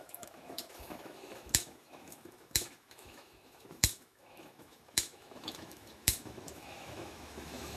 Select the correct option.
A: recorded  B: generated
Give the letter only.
B